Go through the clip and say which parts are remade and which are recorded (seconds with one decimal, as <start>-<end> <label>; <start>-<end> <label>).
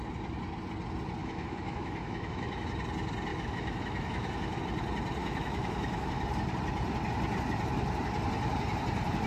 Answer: 0.0-1.2 recorded; 1.2-2.7 remade; 2.7-3.3 recorded; 3.3-4.6 remade; 4.6-5.2 recorded; 5.2-6.2 remade; 6.2-9.3 recorded